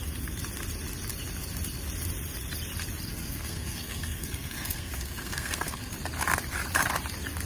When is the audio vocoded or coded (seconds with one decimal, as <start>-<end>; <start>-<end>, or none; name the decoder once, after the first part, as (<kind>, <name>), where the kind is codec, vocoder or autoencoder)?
3.1-5.9 (codec, SNAC)